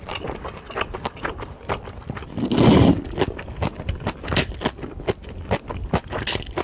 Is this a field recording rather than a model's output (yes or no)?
yes